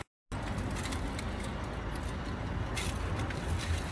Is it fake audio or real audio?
real